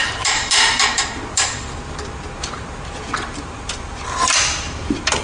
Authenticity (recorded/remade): remade